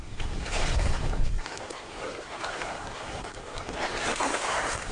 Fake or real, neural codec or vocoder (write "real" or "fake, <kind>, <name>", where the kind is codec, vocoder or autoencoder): fake, codec, SNAC